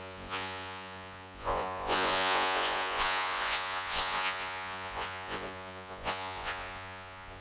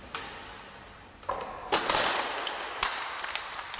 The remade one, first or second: first